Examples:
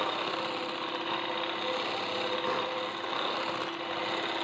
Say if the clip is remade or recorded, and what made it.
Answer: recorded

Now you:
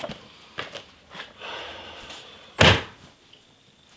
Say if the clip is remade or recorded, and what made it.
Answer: recorded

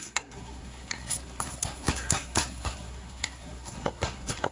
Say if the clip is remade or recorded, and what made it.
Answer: remade, codec, SNAC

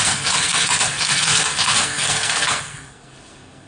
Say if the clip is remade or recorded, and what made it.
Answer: remade, codec, SNAC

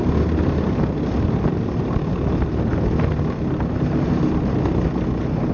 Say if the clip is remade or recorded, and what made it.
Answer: recorded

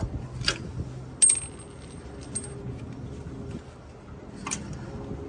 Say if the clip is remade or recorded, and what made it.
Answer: recorded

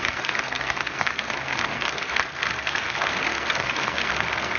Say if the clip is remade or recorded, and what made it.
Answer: remade, codec, SNAC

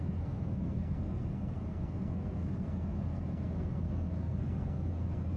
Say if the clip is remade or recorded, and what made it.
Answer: remade, codec, SNAC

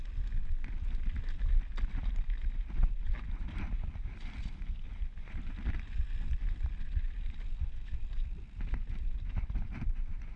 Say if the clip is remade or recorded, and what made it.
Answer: recorded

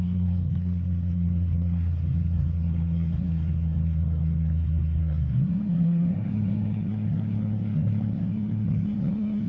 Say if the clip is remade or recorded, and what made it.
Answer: remade, codec, SNAC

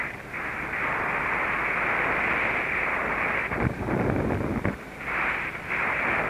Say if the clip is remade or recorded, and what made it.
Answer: recorded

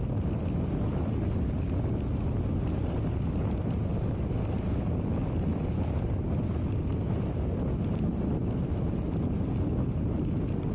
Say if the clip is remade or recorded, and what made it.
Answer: recorded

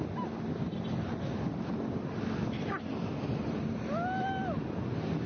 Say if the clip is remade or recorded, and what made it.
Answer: recorded